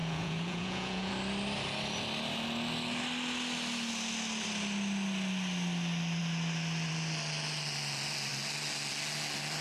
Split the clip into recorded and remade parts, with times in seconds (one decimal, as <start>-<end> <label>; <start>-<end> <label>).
0.0-1.1 remade; 1.1-9.6 recorded